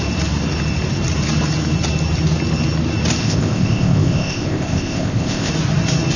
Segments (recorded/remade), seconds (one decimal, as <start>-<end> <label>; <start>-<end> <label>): 0.0-3.2 recorded; 3.2-5.5 remade; 5.5-6.2 recorded